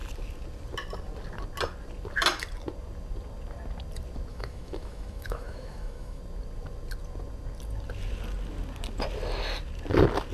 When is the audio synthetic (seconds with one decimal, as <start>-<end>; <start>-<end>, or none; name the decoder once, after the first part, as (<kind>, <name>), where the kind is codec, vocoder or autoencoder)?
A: 4.3-6.2 (autoencoder, DAC-VAE)